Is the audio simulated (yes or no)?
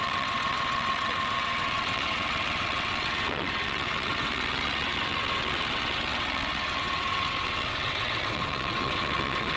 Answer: yes